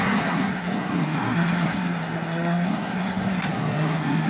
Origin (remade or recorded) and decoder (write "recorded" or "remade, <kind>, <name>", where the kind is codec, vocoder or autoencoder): remade, codec, SNAC